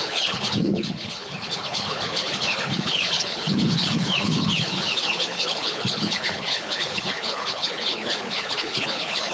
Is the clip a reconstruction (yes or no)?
yes